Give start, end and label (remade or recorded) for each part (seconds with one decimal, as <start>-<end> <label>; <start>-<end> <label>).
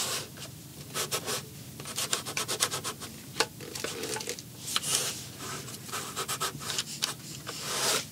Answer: 0.0-4.9 recorded; 4.9-5.9 remade; 5.9-8.1 recorded